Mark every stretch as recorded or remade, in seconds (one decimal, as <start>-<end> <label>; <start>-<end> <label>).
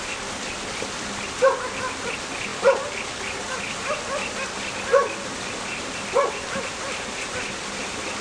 0.0-8.2 recorded